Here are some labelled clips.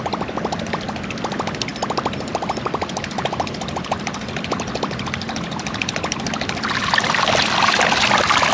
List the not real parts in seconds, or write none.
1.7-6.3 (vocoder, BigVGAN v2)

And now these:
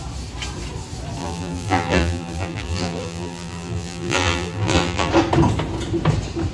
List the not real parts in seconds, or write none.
1.2-5.1 (vocoder, BigVGAN v2)

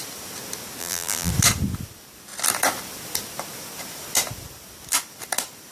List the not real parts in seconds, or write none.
0.8-1.3 (vocoder, BigVGAN v2)

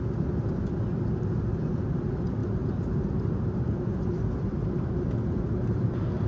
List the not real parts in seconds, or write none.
none

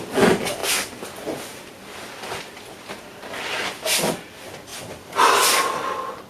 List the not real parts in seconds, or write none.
4.7-5.4 (vocoder, BigVGAN v2)